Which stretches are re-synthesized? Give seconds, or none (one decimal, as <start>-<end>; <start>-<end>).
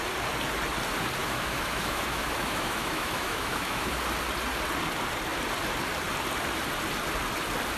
1.2-3.9